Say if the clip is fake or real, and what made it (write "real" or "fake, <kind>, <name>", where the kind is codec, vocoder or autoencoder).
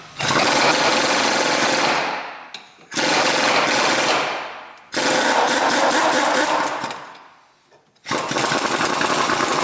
real